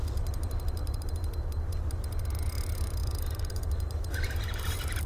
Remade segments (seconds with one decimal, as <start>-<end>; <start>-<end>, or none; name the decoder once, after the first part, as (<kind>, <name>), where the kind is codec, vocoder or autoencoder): 0.8-1.3 (vocoder, BigVGAN v2); 3.0-5.1